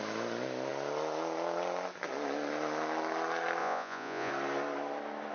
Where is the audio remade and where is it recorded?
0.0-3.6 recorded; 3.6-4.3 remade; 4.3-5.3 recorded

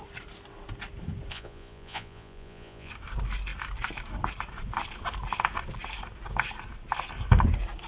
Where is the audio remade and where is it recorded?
0.0-1.3 recorded; 1.3-2.9 remade; 2.9-7.9 recorded